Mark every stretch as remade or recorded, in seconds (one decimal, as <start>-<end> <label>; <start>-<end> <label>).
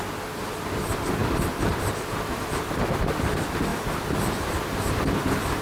0.0-3.7 recorded; 3.7-5.6 remade